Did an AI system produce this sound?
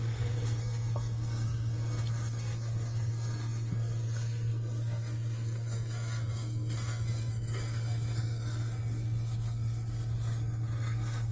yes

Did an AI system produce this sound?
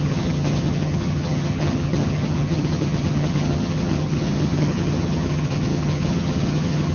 yes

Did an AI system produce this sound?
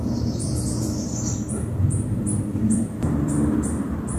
yes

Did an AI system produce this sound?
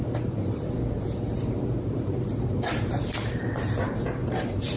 yes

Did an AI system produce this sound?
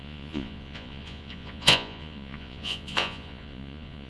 yes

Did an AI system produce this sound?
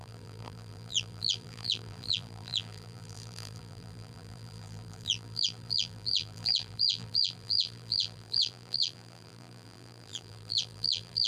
yes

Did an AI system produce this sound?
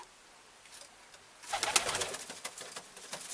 no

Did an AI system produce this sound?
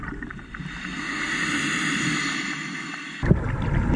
no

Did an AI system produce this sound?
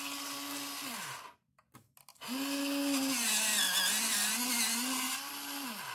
no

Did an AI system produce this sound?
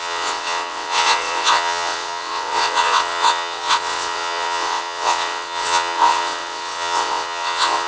yes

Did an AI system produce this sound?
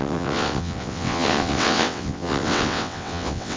yes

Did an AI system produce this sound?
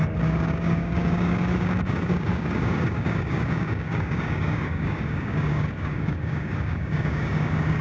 yes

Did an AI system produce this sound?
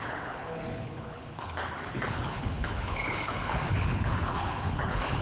yes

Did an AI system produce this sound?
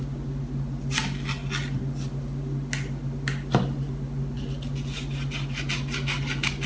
no